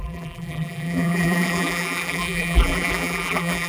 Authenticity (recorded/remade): remade